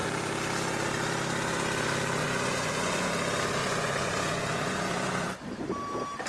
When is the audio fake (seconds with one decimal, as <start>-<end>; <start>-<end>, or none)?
2.2-3.1; 3.6-5.4